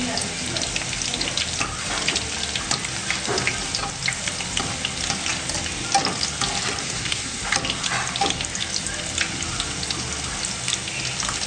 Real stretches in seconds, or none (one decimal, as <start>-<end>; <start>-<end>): 0.0-6.8; 7.4-11.5